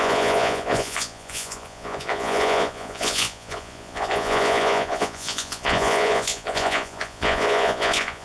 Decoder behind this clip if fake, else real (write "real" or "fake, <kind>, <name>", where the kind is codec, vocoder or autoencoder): fake, vocoder, Vocos